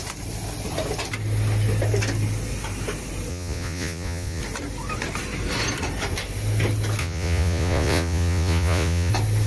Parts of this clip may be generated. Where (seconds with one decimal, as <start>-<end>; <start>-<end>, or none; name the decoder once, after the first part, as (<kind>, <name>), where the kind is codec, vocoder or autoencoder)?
3.3-4.4 (vocoder, Vocos); 7.0-9.1